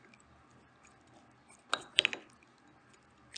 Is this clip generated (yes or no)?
no